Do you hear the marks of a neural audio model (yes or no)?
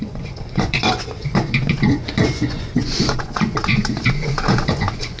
yes